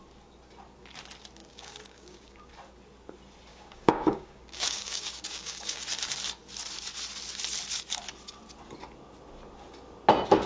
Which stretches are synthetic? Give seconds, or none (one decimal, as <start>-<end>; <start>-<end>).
1.4-2.5; 3.5-5.8